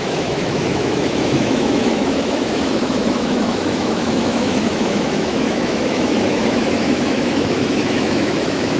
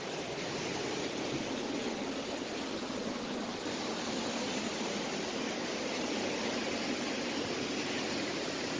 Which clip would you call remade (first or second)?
first